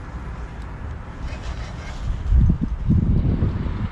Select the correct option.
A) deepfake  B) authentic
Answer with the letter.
B